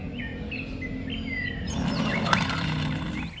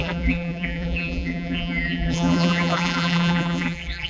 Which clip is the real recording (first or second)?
first